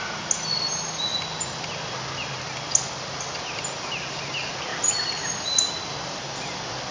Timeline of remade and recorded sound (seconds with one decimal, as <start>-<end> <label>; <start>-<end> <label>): 0.0-6.9 recorded